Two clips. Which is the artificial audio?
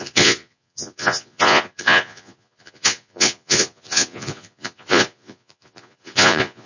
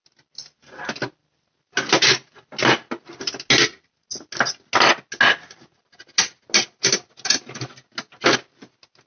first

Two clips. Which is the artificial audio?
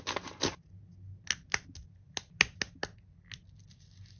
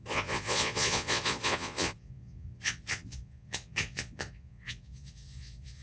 second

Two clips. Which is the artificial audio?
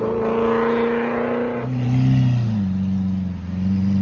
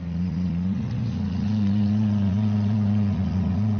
second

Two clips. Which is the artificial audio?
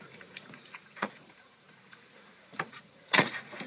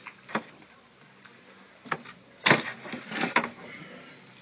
first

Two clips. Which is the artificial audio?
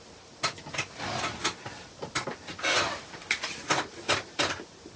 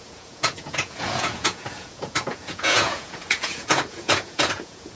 second